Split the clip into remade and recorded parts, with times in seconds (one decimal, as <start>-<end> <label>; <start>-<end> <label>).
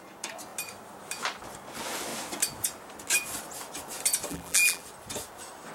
0.0-4.3 recorded; 4.3-4.8 remade; 4.8-5.7 recorded